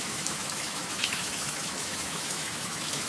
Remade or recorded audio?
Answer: remade